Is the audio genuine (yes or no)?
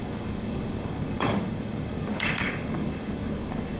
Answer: no